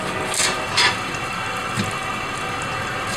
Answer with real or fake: real